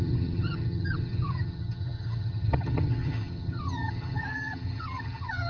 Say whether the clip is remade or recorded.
remade